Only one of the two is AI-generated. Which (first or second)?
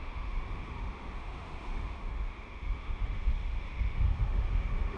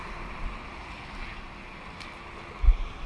first